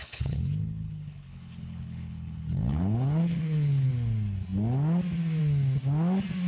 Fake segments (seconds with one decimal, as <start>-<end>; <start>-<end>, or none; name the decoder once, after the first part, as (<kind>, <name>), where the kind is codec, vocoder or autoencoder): 0.0-3.9 (codec, HILCodec)